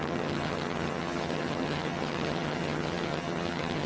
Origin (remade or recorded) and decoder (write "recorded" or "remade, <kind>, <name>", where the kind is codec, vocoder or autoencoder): remade, vocoder, HiFi-GAN